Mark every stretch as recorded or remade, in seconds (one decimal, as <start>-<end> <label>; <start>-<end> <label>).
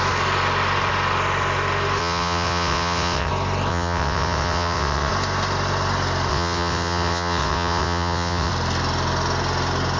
0.0-2.0 recorded; 2.0-3.3 remade; 3.3-3.7 recorded; 3.7-5.1 remade; 5.1-6.3 recorded; 6.3-8.5 remade; 8.5-10.0 recorded